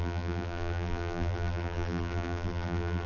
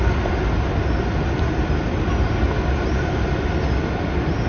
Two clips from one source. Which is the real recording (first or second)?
second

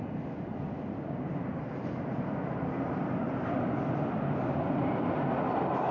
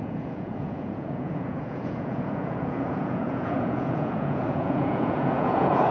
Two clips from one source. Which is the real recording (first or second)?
first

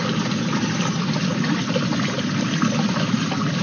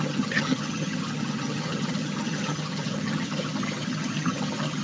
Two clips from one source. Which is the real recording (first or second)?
first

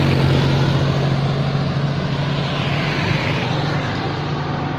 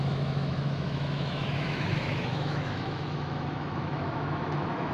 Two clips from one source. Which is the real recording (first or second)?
first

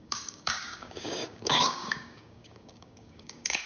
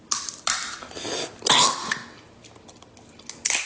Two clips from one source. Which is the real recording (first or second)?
second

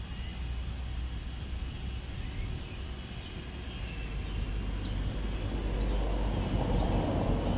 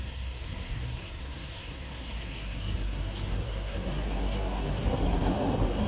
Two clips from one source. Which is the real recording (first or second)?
first